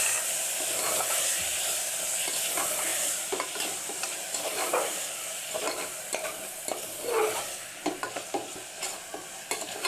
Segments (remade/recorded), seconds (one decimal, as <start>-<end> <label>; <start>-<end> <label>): 0.0-2.9 recorded; 2.9-5.5 remade; 5.5-9.9 recorded